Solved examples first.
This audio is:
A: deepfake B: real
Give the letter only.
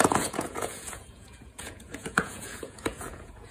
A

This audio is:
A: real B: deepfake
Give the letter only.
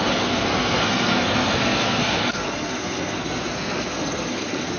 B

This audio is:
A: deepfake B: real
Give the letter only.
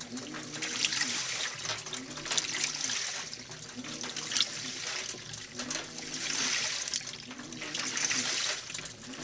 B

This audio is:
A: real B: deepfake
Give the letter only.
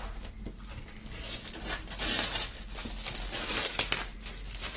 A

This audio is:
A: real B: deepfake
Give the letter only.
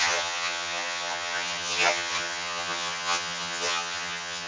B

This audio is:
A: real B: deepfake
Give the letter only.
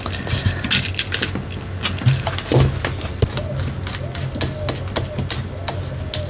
A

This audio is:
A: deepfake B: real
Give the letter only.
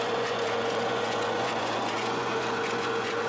A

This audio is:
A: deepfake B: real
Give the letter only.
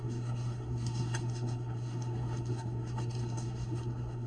A